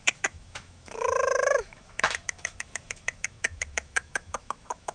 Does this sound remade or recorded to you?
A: remade